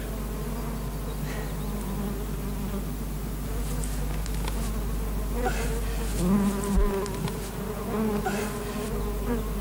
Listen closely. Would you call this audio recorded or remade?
recorded